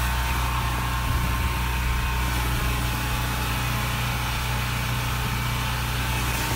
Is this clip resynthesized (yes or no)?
no